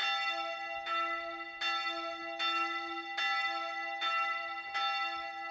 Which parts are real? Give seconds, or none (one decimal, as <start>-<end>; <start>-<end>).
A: 0.0-5.5